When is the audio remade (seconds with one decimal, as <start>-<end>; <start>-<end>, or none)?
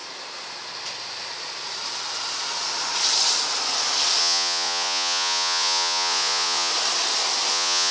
4.2-6.7; 7.5-7.9